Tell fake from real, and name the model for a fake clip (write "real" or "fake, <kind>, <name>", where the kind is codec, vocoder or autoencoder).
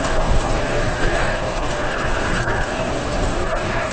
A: fake, codec, DAC